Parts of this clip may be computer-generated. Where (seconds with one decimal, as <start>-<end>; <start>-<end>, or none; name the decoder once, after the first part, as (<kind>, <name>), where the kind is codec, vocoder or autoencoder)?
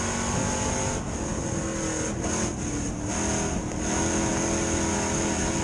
none